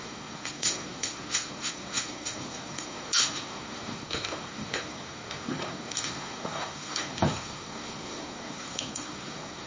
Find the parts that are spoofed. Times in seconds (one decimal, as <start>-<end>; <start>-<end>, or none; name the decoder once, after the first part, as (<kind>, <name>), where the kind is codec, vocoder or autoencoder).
0.0-9.7 (codec, SNAC)